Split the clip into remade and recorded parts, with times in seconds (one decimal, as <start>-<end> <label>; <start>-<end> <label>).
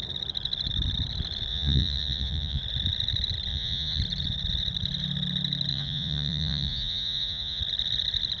0.0-1.5 recorded; 1.5-2.6 remade; 2.6-3.5 recorded; 3.5-4.0 remade; 4.0-5.7 recorded; 5.7-7.6 remade; 7.6-8.4 recorded